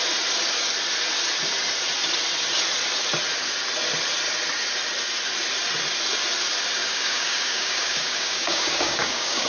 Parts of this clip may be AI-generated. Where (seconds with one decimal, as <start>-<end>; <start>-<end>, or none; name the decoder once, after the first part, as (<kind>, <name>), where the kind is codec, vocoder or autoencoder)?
6.8-9.5 (codec, DAC)